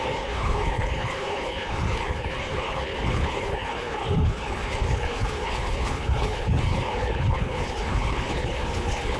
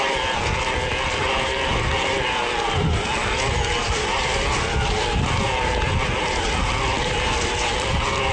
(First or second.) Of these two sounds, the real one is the second